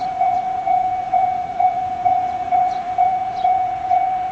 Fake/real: fake